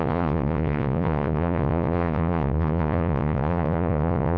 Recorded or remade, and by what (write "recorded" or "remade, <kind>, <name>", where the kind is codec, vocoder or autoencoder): remade, vocoder, Vocos